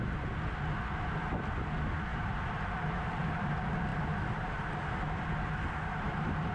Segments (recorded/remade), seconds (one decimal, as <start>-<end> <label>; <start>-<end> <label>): 0.0-2.1 recorded; 2.1-3.4 remade; 3.4-6.5 recorded